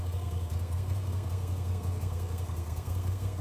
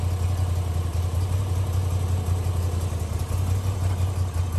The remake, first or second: first